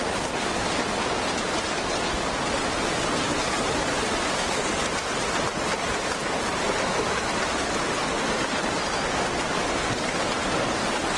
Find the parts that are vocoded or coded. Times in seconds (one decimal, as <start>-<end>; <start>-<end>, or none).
none